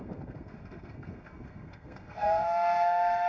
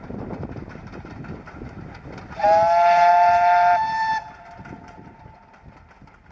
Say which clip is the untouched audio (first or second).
second